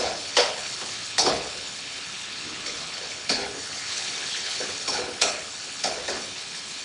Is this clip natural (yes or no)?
no